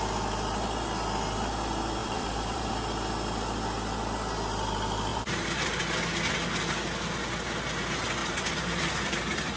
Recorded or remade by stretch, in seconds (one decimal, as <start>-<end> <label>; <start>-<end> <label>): 0.0-2.0 recorded; 2.0-2.7 remade; 2.7-5.1 recorded; 5.1-5.8 remade; 5.8-8.2 recorded; 8.2-9.6 remade